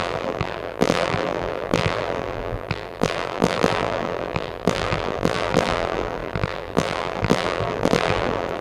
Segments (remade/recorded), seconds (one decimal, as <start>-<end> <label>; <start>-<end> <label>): 0.0-8.6 remade